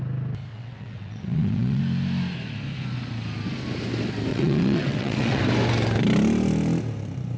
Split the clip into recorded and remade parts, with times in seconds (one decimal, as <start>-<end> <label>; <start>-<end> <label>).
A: 0.0-0.5 recorded; 0.5-1.8 remade; 1.8-4.3 recorded; 4.3-5.4 remade; 5.4-7.4 recorded